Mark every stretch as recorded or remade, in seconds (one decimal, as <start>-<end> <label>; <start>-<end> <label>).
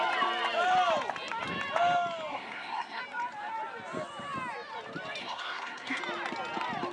0.0-2.3 recorded; 2.3-3.0 remade; 3.0-5.2 recorded; 5.2-6.0 remade; 6.0-6.9 recorded